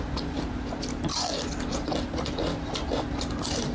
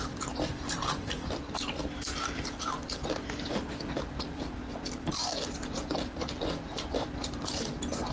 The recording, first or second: first